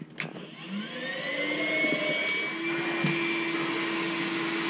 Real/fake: real